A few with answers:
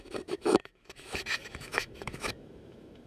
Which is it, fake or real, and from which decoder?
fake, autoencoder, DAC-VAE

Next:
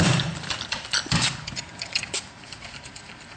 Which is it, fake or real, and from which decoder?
fake, vocoder, BigVGAN v2